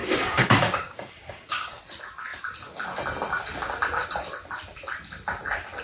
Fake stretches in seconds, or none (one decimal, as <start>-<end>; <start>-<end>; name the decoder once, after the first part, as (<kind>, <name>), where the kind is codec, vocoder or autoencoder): 0.0-1.8 (codec, DAC)